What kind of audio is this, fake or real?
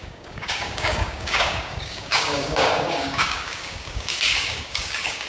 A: fake